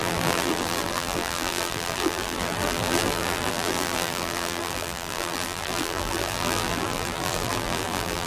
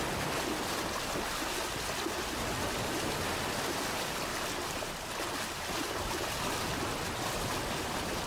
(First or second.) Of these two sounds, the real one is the second